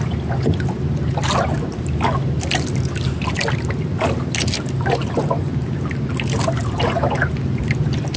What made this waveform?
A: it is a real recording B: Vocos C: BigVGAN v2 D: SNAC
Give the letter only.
A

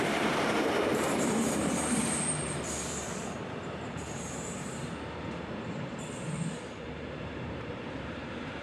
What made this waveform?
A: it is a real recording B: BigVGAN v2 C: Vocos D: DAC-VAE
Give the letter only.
B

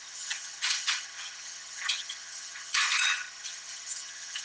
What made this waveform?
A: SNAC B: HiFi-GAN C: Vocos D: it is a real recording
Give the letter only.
B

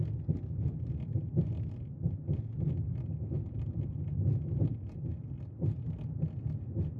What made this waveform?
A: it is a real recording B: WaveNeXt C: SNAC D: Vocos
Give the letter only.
A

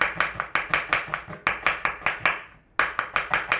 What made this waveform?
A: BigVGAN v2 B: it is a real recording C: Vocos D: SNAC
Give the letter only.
B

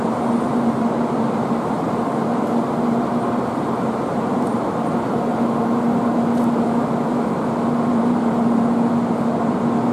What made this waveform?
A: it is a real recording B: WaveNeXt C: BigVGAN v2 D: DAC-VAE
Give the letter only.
C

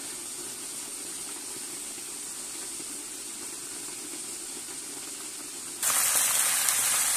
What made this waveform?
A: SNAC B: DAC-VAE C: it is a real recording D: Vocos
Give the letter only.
C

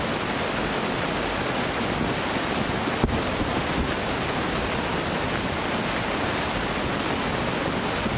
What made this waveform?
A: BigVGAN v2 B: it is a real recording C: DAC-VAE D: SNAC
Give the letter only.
B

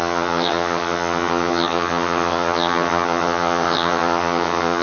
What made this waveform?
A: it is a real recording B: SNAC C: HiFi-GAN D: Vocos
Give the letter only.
C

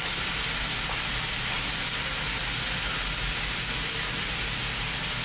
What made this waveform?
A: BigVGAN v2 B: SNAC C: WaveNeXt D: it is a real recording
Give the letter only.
D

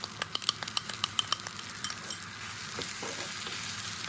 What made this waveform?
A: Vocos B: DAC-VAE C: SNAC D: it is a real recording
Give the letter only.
D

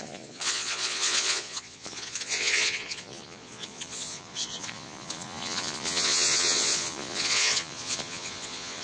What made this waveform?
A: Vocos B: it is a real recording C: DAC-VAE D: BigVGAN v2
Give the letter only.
A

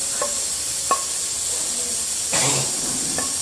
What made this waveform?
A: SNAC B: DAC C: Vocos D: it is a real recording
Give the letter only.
D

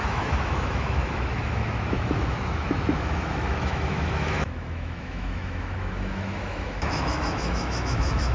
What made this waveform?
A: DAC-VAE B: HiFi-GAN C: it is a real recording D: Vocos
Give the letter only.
A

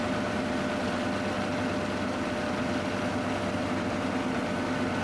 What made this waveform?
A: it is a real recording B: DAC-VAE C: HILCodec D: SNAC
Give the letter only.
A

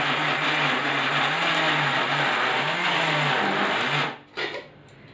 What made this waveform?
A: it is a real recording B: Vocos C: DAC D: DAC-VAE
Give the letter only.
A